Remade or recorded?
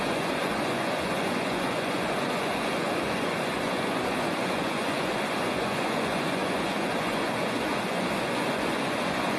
remade